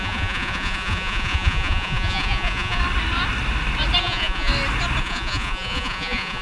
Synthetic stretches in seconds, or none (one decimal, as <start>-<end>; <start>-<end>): 0.0-2.8; 4.0-4.5; 5.0-6.4